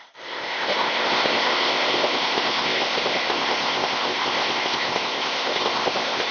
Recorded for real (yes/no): no